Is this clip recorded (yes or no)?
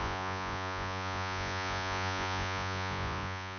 no